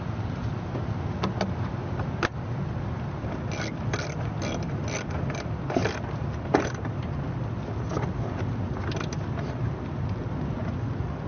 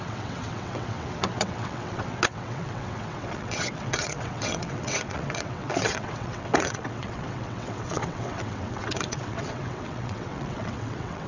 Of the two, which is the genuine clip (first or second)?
first